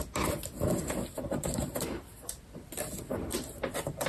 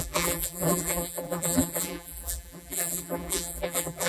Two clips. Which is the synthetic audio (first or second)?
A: second